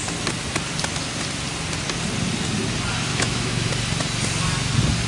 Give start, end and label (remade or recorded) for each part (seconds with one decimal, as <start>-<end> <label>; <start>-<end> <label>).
0.0-3.1 recorded; 3.1-3.7 remade; 3.7-5.1 recorded